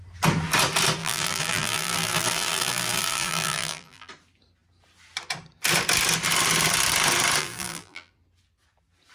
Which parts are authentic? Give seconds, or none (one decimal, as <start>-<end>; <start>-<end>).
0.0-1.0; 4.1-7.4; 8.1-9.1